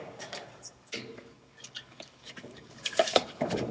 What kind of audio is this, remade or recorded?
remade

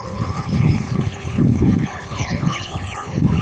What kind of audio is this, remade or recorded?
remade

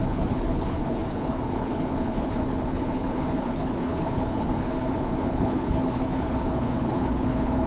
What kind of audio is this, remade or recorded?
remade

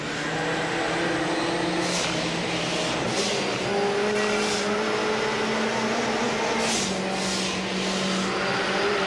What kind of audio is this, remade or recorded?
recorded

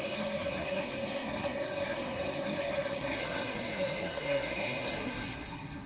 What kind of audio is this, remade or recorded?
remade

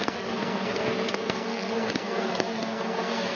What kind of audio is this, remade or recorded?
remade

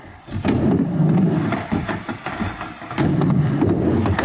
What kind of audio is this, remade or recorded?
recorded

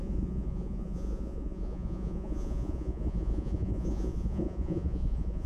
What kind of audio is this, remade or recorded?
remade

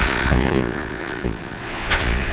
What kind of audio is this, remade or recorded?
remade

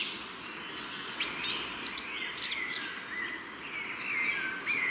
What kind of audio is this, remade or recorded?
recorded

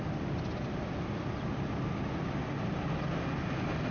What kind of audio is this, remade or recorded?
recorded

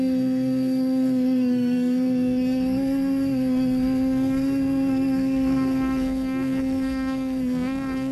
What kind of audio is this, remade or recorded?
remade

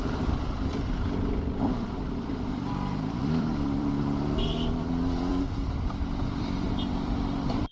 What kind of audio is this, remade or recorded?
remade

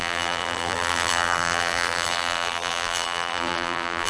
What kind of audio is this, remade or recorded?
remade